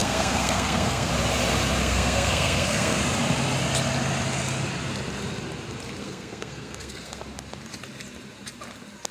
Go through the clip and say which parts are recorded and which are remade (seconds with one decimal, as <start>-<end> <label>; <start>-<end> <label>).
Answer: 0.0-1.1 remade; 1.1-1.8 recorded; 1.8-3.0 remade; 3.0-6.0 recorded; 6.0-7.2 remade; 7.2-9.1 recorded